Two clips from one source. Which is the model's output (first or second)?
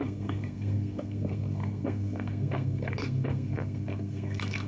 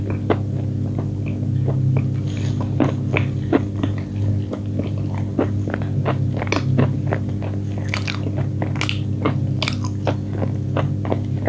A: first